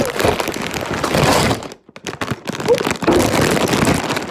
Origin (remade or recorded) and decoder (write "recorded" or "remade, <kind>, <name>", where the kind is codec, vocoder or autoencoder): recorded